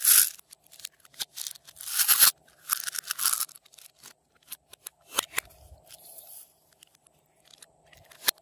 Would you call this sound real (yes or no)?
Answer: yes